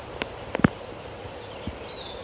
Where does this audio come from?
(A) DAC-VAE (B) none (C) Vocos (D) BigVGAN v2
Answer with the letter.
B